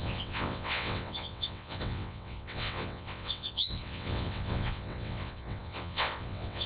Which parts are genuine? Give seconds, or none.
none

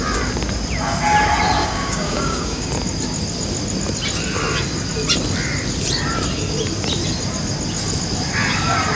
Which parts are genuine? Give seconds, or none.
0.0-1.6; 2.7-9.0

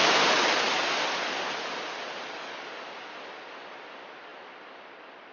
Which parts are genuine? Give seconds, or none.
0.0-4.3

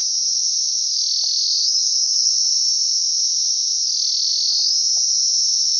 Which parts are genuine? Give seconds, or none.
0.0-1.6; 2.3-5.8